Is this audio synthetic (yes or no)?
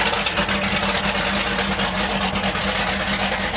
no